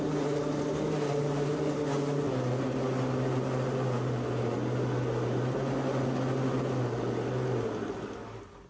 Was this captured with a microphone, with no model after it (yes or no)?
yes